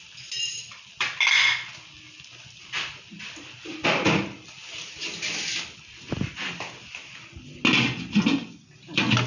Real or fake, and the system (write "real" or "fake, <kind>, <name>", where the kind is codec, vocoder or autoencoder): real